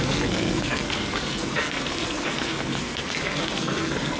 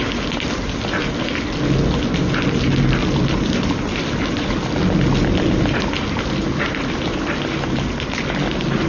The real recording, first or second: second